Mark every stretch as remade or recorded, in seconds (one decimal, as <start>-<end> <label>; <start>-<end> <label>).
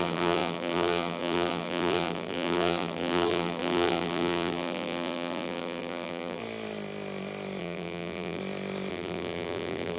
0.0-6.4 remade; 6.4-7.6 recorded; 7.6-8.4 remade; 8.4-8.9 recorded; 8.9-10.0 remade